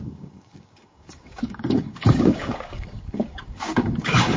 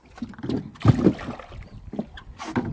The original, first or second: second